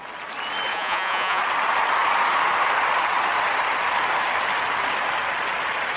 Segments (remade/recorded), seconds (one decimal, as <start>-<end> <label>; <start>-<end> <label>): 0.0-0.7 recorded; 0.7-1.4 remade; 1.4-6.0 recorded